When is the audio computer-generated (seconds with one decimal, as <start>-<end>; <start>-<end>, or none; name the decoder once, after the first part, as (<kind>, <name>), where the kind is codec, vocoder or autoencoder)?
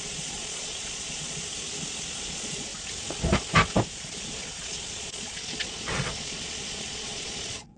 0.0-1.4 (vocoder, Vocos); 2.2-2.7; 3.9-7.8